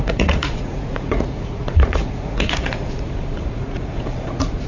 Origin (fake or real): fake